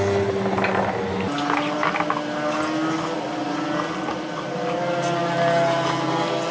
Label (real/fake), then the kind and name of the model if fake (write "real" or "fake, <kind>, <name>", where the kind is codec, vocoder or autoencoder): real